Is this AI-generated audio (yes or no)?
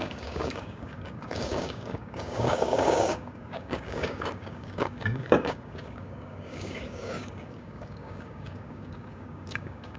yes